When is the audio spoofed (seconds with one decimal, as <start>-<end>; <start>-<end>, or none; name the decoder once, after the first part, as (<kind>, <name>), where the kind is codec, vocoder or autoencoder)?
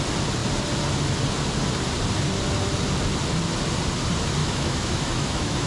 4.4-5.7 (autoencoder, DAC-VAE)